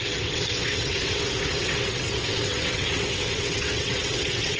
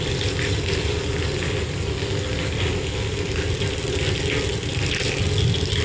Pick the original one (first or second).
second